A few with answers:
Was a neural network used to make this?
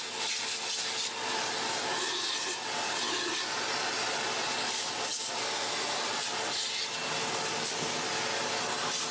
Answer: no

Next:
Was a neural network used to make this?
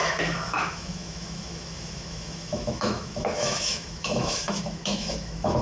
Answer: yes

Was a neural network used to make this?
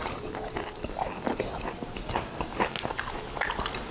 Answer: no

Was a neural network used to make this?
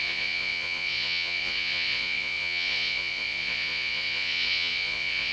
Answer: yes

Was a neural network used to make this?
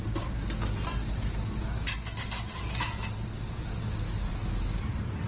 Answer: no